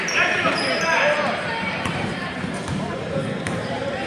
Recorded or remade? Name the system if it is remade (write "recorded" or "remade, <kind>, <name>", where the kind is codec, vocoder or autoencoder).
remade, vocoder, BigVGAN v2